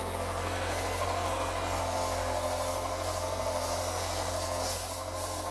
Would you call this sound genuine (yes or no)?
no